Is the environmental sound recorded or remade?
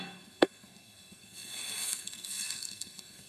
remade